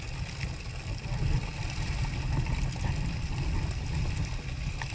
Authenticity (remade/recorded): recorded